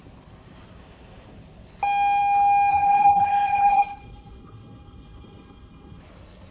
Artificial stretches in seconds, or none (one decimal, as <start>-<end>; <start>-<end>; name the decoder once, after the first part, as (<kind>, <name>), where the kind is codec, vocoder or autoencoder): 2.7-6.0 (codec, HILCodec)